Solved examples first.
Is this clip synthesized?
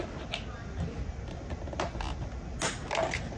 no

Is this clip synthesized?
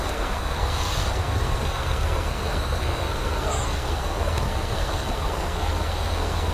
yes